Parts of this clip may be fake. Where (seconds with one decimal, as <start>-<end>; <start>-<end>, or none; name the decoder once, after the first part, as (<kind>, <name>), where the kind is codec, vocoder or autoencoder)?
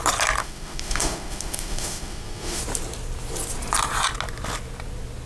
0.4-2.6 (autoencoder, DAC-VAE)